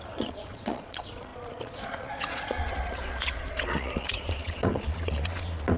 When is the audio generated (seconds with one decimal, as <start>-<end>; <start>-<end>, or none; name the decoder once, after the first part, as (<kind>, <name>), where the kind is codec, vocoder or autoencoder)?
0.0-5.8 (vocoder, Vocos)